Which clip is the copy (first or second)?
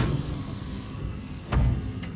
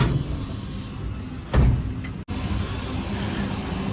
first